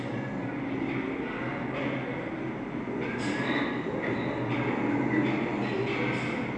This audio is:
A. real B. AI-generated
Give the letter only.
A